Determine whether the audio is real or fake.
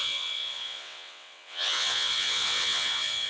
fake